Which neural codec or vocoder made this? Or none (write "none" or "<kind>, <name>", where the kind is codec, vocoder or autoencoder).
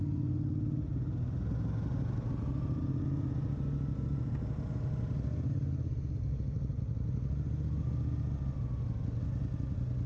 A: none